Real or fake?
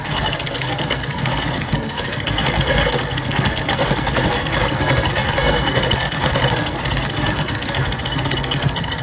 fake